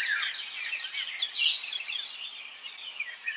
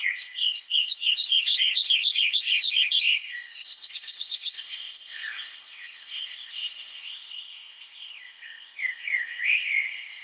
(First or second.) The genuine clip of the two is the first